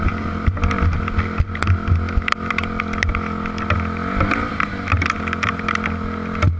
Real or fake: real